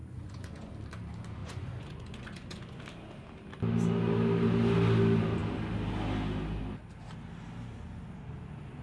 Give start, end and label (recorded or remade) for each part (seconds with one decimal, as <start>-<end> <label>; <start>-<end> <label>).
0.0-0.7 remade; 0.7-1.4 recorded; 1.4-2.8 remade; 2.8-8.8 recorded